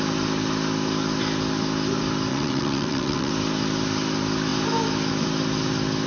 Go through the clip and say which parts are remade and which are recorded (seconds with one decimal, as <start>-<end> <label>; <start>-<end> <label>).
0.0-2.3 recorded; 2.3-3.3 remade; 3.3-6.1 recorded